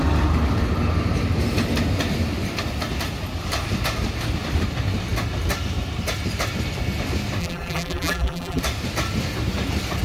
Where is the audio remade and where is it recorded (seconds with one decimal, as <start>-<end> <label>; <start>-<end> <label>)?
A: 0.0-7.4 recorded; 7.4-8.6 remade; 8.6-10.0 recorded